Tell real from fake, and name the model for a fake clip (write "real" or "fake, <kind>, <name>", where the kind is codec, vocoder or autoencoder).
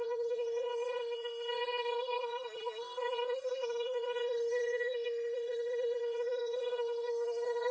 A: fake, codec, SNAC